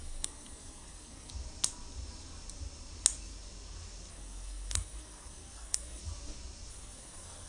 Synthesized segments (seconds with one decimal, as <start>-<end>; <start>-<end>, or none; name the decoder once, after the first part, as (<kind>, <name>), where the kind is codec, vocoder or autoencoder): 0.0-1.3 (codec, SNAC); 4.1-6.0; 6.7-7.5